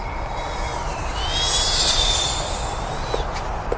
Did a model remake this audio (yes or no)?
no